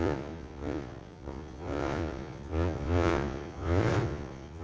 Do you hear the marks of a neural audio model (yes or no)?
yes